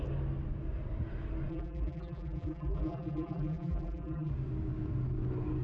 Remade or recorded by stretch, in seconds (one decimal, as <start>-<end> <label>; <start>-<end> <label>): 0.0-1.5 recorded; 1.5-4.3 remade; 4.3-5.6 recorded